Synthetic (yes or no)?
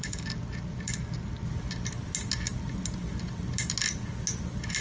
no